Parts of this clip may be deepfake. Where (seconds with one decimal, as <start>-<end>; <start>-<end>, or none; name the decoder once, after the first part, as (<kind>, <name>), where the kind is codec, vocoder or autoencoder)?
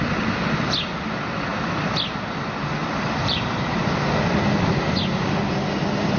1.5-2.6 (vocoder, BigVGAN v2); 3.2-3.8